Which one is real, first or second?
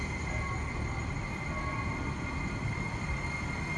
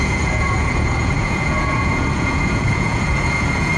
first